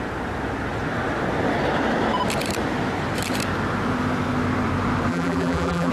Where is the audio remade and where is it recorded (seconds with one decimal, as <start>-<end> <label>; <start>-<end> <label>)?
0.0-5.1 recorded; 5.1-5.9 remade